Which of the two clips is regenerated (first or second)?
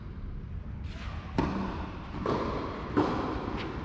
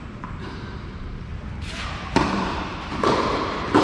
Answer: second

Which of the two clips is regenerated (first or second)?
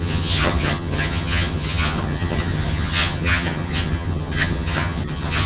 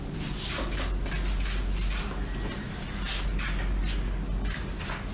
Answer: first